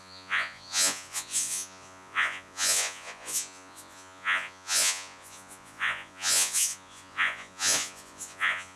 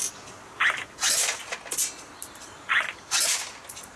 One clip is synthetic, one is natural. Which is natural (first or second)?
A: second